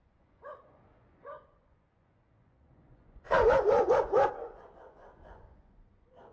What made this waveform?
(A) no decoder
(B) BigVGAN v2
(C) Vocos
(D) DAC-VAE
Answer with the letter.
C